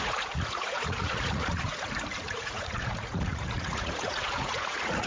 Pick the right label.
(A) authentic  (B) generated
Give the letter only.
B